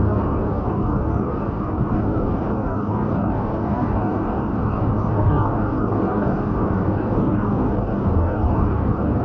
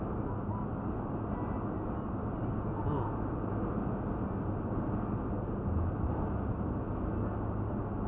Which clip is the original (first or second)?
second